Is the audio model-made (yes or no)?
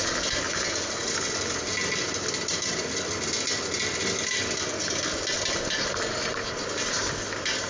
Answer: no